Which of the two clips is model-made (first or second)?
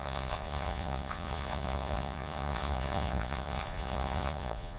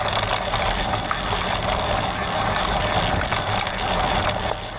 first